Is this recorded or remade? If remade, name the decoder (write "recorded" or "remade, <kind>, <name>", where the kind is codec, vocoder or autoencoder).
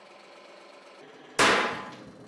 recorded